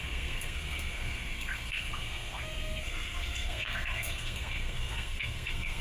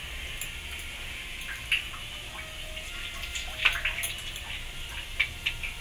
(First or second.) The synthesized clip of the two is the first